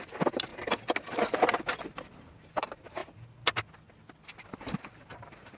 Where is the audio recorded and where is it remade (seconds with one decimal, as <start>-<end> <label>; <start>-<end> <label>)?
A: 0.0-0.5 remade; 0.5-2.2 recorded; 2.2-3.0 remade; 3.0-4.5 recorded; 4.5-5.6 remade